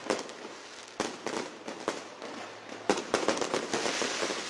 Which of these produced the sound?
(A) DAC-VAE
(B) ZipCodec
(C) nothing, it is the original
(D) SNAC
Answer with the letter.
C